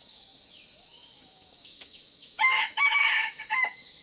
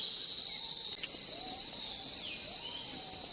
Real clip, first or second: second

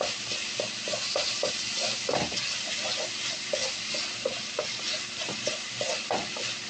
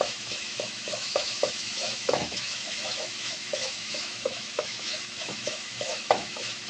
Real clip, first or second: first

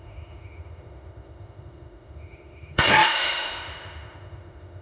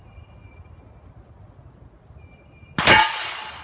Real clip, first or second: second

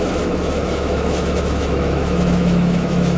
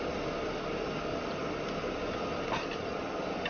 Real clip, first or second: second